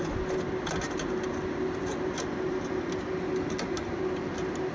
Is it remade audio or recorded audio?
recorded